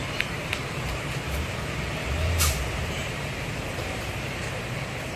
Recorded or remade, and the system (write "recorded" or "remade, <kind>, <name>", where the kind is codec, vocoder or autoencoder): remade, vocoder, BigVGAN v2